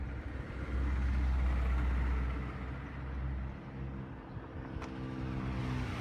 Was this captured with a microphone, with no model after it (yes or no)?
yes